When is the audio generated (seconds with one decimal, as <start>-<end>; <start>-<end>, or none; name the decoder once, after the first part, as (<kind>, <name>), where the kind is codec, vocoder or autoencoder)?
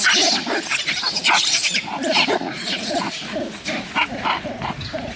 1.1-3.1 (vocoder, Vocos)